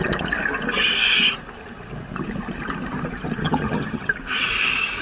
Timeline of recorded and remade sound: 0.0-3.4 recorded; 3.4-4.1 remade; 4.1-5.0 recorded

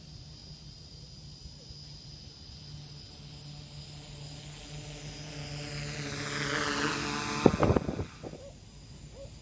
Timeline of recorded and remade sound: 0.0-9.4 recorded

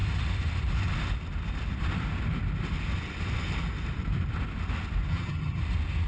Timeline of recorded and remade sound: 0.0-5.1 recorded; 5.1-5.6 remade; 5.6-6.1 recorded

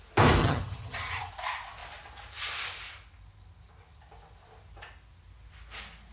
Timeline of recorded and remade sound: 0.0-0.4 recorded; 0.4-1.3 remade; 1.3-6.1 recorded